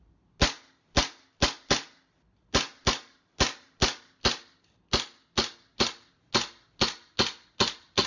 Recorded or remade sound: recorded